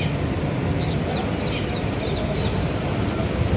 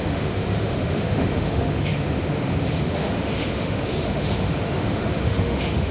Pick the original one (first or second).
first